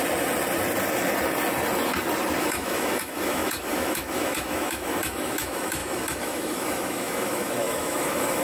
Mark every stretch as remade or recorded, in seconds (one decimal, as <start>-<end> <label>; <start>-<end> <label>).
0.0-2.4 recorded; 2.4-8.4 remade

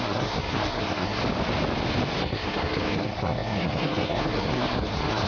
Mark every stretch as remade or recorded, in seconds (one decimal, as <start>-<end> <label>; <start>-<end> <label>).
0.0-1.2 remade; 1.2-2.2 recorded; 2.2-5.3 remade

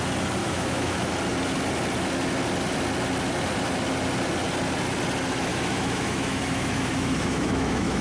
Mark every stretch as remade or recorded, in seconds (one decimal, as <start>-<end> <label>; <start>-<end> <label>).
0.0-0.4 recorded; 0.4-1.1 remade; 1.1-5.5 recorded; 5.5-8.0 remade

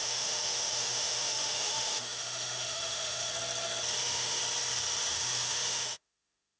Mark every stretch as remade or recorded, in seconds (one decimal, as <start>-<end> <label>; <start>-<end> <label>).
0.0-3.3 remade; 3.3-4.0 recorded; 4.0-4.4 remade; 4.4-5.1 recorded; 5.1-6.6 remade

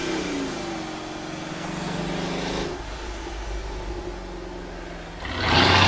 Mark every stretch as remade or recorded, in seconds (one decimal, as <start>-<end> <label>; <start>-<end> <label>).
0.0-1.5 recorded; 1.5-2.0 remade; 2.0-5.9 recorded

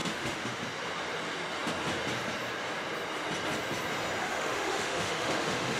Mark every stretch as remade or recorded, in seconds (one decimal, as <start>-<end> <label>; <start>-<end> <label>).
0.0-0.6 remade; 0.6-4.2 recorded; 4.2-5.8 remade

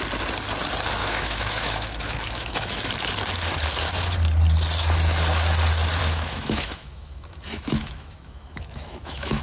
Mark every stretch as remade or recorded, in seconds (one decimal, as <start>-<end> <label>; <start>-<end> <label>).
0.0-1.0 recorded; 1.0-2.9 remade; 2.9-6.0 recorded; 6.0-9.4 remade

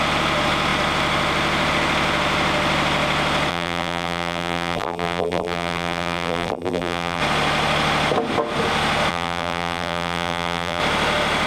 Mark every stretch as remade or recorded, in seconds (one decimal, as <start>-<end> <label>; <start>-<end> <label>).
0.0-3.5 recorded; 3.5-7.2 remade; 7.2-9.1 recorded; 9.1-10.8 remade; 10.8-11.5 recorded